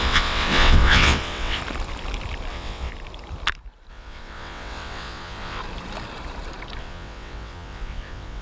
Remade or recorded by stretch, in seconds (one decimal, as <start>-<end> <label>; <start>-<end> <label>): 0.0-1.6 remade; 1.6-2.5 recorded; 2.5-2.9 remade; 2.9-3.9 recorded; 3.9-5.6 remade; 5.6-6.8 recorded; 6.8-8.4 remade